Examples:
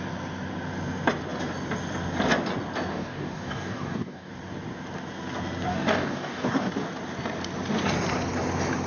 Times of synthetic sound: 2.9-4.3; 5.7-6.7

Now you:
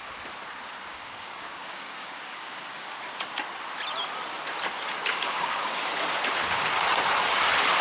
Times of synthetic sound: 0.9-3.0; 5.1-5.8